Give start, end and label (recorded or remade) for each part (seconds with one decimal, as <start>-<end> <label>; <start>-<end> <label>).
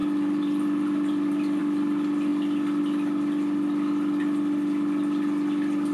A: 0.0-1.6 remade; 1.6-5.9 recorded